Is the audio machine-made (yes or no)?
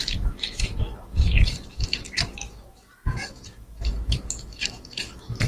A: yes